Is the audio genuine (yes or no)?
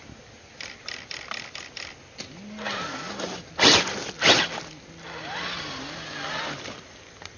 yes